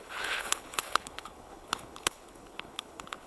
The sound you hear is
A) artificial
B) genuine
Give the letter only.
A